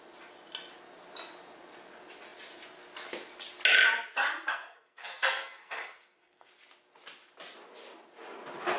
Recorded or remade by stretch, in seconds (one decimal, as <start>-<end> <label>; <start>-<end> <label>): 0.0-4.5 recorded; 4.5-6.5 remade; 6.5-8.8 recorded